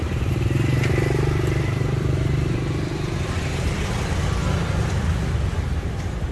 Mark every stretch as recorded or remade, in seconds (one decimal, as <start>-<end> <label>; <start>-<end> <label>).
0.0-3.8 remade; 3.8-6.3 recorded